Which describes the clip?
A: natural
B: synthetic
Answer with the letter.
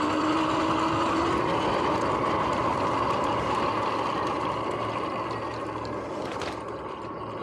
A